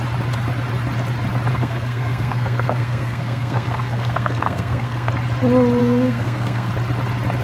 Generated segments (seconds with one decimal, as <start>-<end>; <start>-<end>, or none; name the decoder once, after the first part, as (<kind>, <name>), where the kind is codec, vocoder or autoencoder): 1.5-5.1 (codec, SNAC); 5.8-6.7